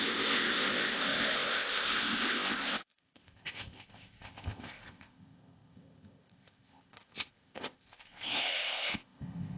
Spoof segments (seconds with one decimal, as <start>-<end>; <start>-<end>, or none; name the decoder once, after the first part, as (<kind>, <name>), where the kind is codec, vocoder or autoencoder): 0.0-9.6 (codec, ZipCodec)